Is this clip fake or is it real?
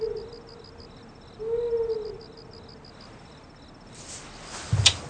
real